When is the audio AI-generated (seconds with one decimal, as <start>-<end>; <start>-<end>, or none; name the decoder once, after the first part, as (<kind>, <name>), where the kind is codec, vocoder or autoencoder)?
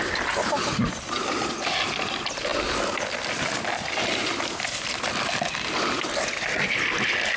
none